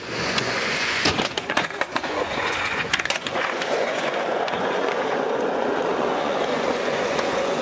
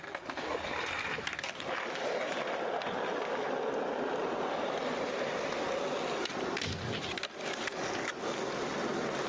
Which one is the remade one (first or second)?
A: first